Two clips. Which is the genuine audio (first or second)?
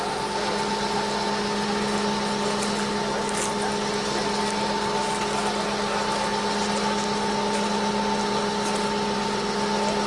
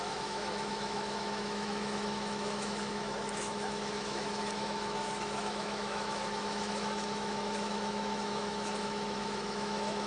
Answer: first